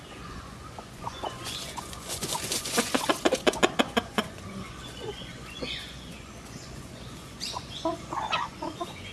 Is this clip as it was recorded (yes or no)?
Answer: no